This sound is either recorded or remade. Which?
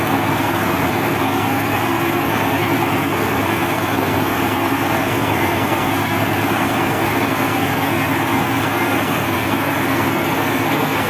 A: remade